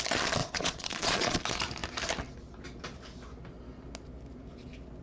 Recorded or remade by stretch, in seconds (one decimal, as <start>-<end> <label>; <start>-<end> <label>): 0.0-0.4 recorded; 0.4-1.4 remade; 1.4-5.0 recorded